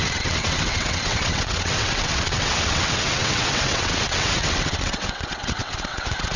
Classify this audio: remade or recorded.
remade